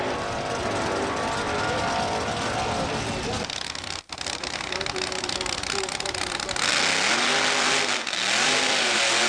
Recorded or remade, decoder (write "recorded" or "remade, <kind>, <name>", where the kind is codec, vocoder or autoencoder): recorded